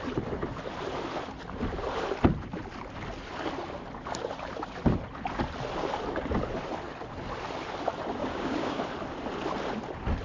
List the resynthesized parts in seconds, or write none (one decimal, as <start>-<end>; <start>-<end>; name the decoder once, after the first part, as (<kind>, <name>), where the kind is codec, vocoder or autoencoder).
8.2-8.8 (codec, DAC)